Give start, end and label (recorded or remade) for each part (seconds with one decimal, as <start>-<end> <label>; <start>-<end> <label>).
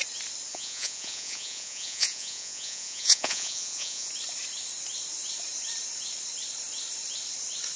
0.0-0.5 recorded; 0.5-4.1 remade; 4.1-7.8 recorded